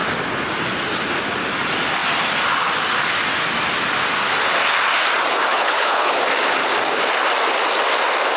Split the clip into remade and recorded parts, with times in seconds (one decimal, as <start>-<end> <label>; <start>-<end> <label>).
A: 0.0-5.5 recorded; 5.5-6.1 remade; 6.1-8.4 recorded